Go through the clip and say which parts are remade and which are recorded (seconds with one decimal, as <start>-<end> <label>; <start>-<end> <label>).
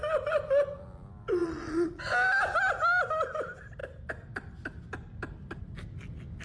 0.0-1.4 recorded; 1.4-2.0 remade; 2.0-6.4 recorded